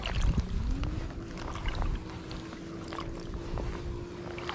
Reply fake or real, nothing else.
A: real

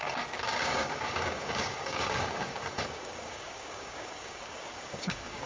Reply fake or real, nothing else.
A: fake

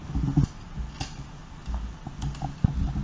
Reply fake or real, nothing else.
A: real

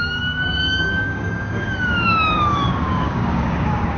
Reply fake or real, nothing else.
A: fake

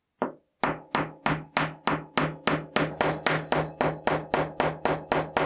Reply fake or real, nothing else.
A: real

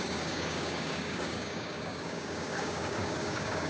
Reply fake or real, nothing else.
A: fake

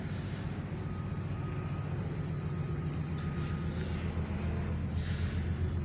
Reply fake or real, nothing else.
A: real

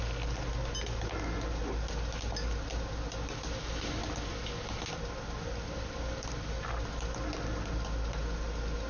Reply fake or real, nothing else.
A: real